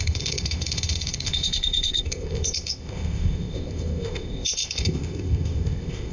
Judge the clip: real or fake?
fake